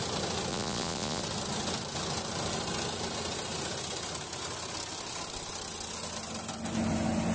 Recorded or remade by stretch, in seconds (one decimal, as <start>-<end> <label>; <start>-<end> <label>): 0.0-0.5 recorded; 0.5-1.2 remade; 1.2-7.3 recorded